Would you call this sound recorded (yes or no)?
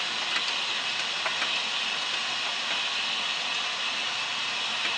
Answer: yes